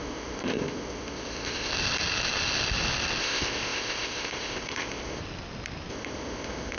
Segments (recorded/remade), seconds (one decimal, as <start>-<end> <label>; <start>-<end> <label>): 0.0-1.7 remade; 1.7-3.2 recorded; 3.2-5.2 remade; 5.2-5.9 recorded; 5.9-6.8 remade